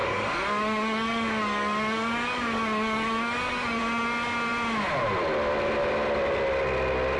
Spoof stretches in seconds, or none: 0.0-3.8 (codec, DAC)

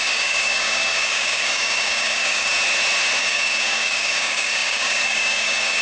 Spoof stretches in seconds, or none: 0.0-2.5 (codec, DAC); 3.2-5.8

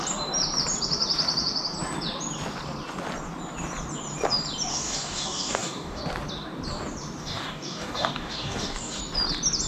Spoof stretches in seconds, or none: 4.7-6.0 (codec, DAC); 7.2-9.0

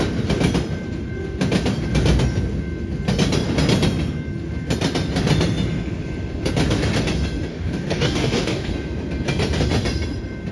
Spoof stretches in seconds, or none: 7.5-8.7 (codec, DAC)